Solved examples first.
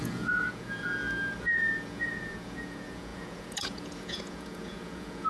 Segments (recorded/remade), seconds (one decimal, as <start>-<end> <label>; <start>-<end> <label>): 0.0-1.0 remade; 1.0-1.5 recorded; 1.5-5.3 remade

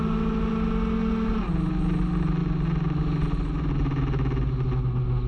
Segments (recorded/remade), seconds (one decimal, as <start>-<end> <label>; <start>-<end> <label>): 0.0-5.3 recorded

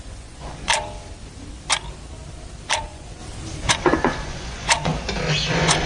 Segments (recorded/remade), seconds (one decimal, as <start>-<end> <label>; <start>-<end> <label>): 0.0-0.7 remade; 0.7-2.8 recorded; 2.8-3.2 remade; 3.2-3.7 recorded; 3.7-4.9 remade; 4.9-5.5 recorded; 5.5-5.9 remade

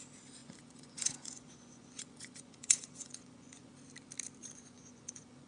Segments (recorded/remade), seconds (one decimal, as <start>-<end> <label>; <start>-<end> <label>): 0.0-0.4 recorded; 0.4-3.7 remade; 3.7-4.4 recorded; 4.4-5.5 remade

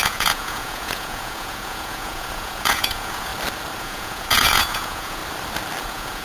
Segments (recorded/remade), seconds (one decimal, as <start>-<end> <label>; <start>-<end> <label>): 0.0-3.3 remade; 3.3-3.8 recorded; 3.8-5.2 remade; 5.2-5.8 recorded; 5.8-6.2 remade

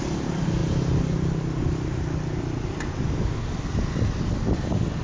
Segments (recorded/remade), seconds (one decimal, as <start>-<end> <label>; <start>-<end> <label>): 0.0-5.0 recorded

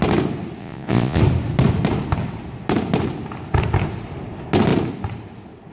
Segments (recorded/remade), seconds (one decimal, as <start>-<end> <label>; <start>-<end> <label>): 0.0-0.6 recorded; 0.6-1.2 remade; 1.2-5.7 recorded

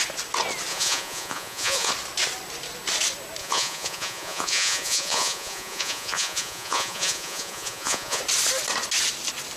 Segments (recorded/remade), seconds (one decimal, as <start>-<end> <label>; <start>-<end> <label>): 0.0-0.7 recorded; 0.7-1.9 remade; 1.9-3.4 recorded; 3.4-8.2 remade; 8.2-9.6 recorded